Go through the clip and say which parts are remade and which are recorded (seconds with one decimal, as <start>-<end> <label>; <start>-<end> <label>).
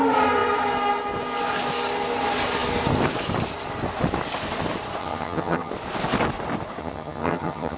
0.0-5.0 recorded; 5.0-5.7 remade; 5.7-6.8 recorded; 6.8-7.8 remade